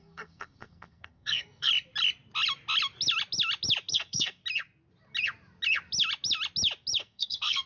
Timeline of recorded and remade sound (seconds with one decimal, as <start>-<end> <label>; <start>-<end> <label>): 0.0-1.7 remade; 1.7-3.9 recorded; 3.9-4.4 remade; 4.4-7.0 recorded; 7.0-7.7 remade